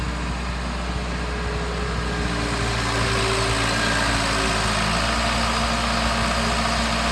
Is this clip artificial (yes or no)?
no